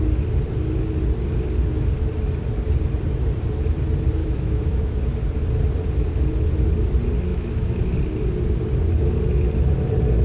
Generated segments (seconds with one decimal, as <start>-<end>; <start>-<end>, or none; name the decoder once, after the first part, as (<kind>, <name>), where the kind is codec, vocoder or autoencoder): 4.2-5.0 (autoencoder, DAC-VAE); 7.3-7.8